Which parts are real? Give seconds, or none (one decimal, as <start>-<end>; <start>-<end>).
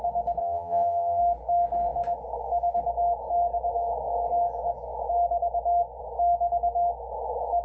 0.0-0.4; 1.2-7.6